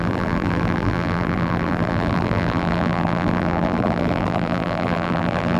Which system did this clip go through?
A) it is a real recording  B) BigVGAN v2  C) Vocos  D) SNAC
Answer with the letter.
B